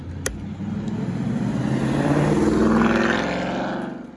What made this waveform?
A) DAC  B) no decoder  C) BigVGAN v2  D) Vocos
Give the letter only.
B